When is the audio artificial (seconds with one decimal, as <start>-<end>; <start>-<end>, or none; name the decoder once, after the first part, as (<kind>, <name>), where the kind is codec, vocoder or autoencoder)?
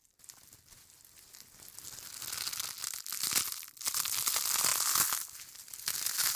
none